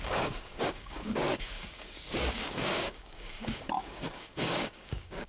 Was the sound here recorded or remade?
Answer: remade